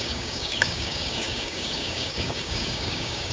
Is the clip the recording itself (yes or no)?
no